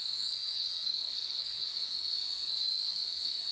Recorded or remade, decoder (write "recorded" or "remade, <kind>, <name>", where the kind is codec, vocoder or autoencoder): remade, codec, SNAC